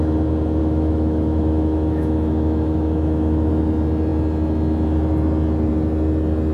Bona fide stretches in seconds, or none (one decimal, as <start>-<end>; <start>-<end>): 0.0-0.6; 3.5-6.5